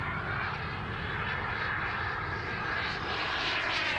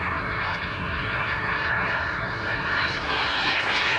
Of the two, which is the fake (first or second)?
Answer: second